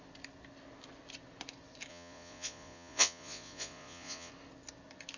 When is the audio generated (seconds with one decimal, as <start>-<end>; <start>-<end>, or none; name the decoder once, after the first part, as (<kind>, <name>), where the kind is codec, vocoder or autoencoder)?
1.9-4.3 (vocoder, Vocos)